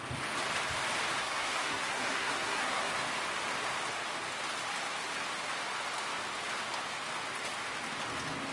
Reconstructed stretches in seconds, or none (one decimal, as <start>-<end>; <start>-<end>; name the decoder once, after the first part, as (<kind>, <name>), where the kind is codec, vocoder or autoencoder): 1.2-2.9 (codec, SNAC)